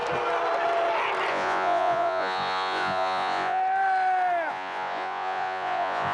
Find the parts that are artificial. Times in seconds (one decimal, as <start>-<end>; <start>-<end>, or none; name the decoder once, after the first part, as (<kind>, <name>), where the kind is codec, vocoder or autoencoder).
1.3-3.6 (vocoder, Vocos); 4.5-6.1